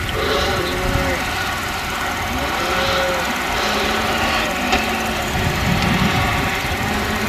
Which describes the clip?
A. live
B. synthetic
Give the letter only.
A